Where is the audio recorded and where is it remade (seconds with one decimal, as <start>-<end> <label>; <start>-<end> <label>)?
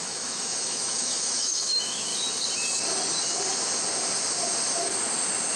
0.0-2.1 remade; 2.1-5.6 recorded